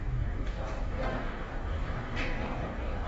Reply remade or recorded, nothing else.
remade